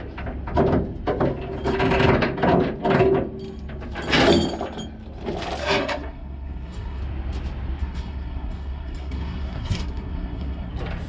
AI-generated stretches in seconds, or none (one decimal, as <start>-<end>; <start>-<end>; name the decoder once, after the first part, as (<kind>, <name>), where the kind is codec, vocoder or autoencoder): 5.6-7.0 (codec, SNAC); 7.8-10.7